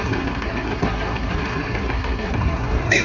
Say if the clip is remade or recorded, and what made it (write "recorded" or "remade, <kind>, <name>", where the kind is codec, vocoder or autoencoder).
remade, codec, SNAC